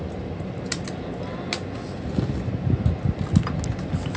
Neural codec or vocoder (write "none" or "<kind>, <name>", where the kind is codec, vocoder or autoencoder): none